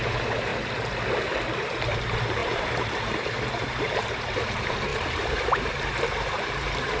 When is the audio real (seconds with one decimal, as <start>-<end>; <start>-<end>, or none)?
0.5-1.8